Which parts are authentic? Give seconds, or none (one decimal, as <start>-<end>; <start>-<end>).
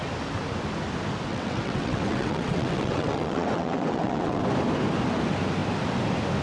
0.0-1.3; 4.4-6.4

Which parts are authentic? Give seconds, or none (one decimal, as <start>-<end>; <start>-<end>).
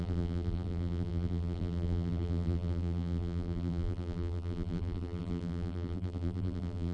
none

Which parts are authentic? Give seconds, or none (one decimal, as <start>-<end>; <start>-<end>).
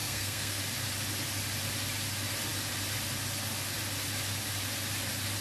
0.6-5.4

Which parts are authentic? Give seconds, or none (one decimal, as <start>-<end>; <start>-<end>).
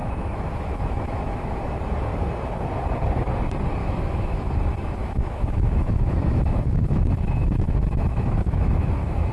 1.6-3.8; 4.5-5.0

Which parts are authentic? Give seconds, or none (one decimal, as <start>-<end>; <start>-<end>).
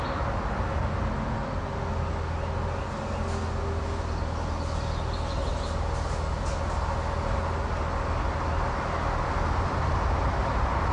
0.0-10.9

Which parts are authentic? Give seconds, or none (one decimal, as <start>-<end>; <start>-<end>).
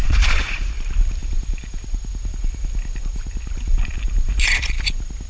0.7-5.3